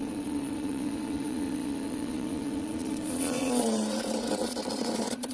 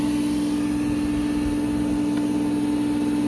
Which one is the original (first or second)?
second